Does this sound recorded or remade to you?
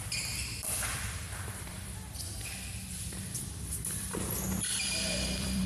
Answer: remade